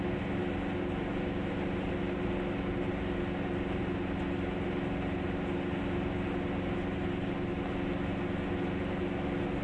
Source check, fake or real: real